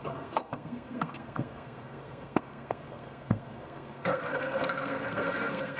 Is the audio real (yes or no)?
no